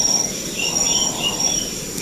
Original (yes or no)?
yes